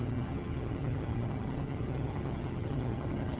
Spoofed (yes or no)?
yes